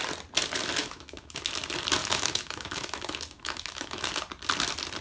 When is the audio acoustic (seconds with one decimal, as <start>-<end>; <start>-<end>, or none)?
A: 0.0-0.8; 1.6-2.0; 4.1-5.0